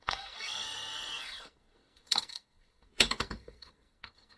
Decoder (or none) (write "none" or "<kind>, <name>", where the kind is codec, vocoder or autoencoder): codec, SNAC